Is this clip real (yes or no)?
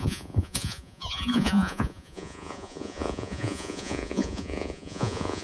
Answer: no